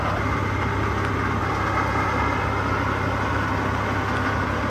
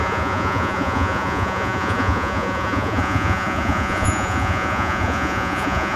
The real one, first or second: first